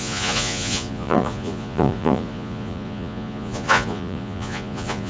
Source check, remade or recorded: remade